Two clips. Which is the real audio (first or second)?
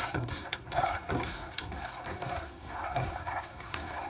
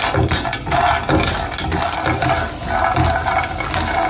second